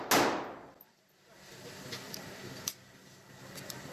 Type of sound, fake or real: real